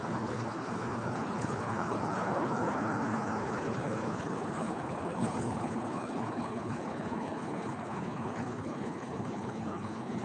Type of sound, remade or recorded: remade